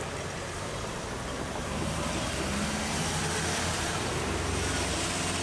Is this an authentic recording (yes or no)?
yes